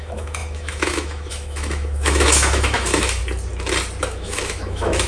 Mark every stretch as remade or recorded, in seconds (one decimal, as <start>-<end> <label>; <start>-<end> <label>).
0.0-3.2 remade; 3.2-4.0 recorded; 4.0-5.1 remade